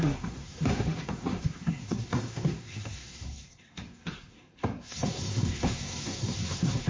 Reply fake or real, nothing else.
fake